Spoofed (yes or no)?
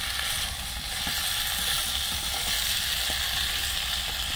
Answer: no